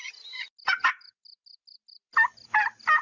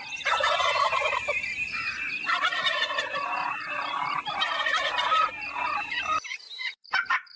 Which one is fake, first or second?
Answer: second